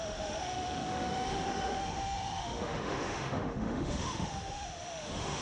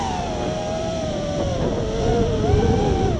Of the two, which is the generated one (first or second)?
first